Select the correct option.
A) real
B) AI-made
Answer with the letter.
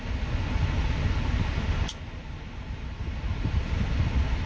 A